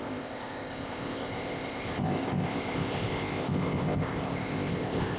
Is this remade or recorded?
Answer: remade